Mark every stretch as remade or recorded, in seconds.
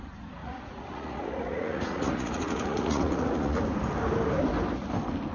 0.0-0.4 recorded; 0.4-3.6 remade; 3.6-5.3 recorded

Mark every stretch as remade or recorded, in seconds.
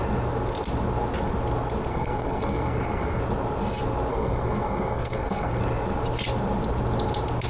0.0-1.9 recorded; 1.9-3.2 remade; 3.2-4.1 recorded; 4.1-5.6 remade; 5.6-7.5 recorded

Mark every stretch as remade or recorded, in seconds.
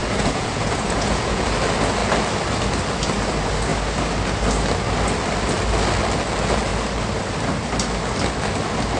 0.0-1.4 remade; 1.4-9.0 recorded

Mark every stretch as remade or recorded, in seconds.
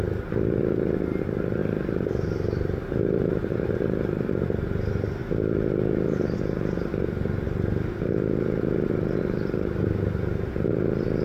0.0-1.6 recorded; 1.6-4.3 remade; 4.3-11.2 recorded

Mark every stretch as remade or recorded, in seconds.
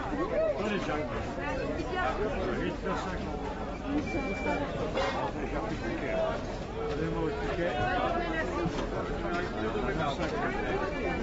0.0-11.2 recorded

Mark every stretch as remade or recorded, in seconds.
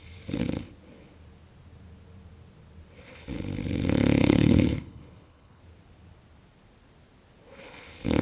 0.0-4.2 recorded; 4.2-5.6 remade; 5.6-8.2 recorded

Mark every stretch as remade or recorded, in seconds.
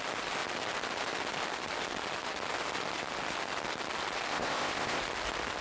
0.0-4.3 recorded; 4.3-5.0 remade; 5.0-5.6 recorded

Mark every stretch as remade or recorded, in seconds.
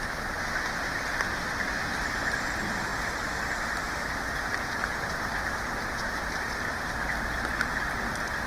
0.0-8.5 recorded